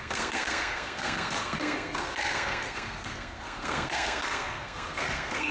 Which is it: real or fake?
fake